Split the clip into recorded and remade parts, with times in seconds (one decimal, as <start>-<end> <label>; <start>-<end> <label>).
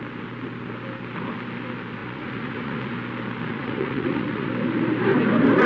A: 0.0-2.0 recorded; 2.0-2.9 remade; 2.9-3.5 recorded; 3.5-4.5 remade; 4.5-5.7 recorded